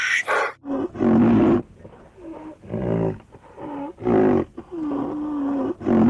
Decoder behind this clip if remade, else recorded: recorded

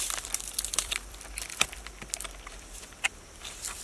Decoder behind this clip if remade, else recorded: remade, vocoder, BigVGAN v2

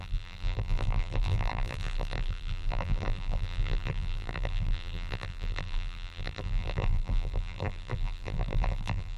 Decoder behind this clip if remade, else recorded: remade, vocoder, BigVGAN v2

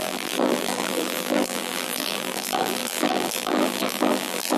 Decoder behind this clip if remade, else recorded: remade, vocoder, BigVGAN v2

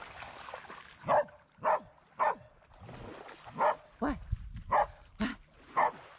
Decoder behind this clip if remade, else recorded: recorded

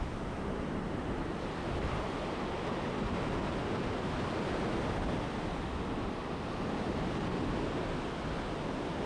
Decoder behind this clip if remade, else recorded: recorded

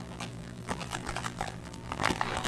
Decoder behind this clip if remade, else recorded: remade, vocoder, BigVGAN v2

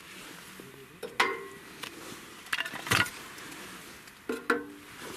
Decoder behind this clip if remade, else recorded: recorded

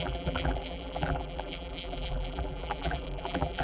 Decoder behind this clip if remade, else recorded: remade, vocoder, BigVGAN v2